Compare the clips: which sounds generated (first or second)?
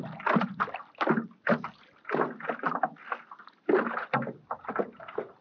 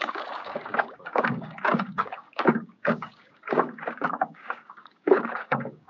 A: second